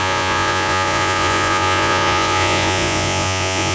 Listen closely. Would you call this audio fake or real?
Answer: fake